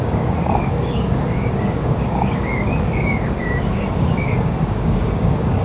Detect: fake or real fake